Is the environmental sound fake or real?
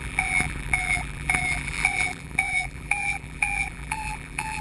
fake